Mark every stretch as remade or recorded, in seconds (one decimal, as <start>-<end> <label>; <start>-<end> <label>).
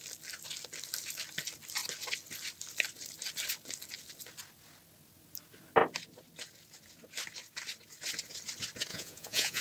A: 0.0-8.9 recorded; 8.9-9.6 remade